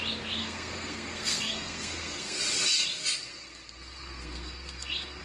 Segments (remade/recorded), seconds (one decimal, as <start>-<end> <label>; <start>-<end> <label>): 0.0-0.4 recorded; 0.4-2.4 remade; 2.4-3.2 recorded; 3.2-5.2 remade